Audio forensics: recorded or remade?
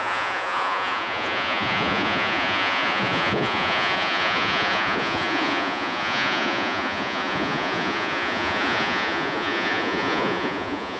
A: remade